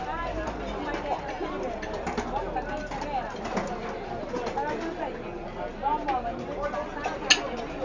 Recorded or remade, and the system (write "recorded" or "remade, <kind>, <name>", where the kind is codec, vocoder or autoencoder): recorded